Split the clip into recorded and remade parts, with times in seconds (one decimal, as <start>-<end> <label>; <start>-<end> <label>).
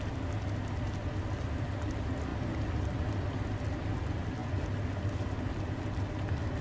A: 0.0-2.3 recorded; 2.3-3.1 remade; 3.1-6.6 recorded